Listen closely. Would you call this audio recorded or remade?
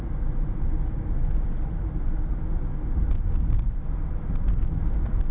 recorded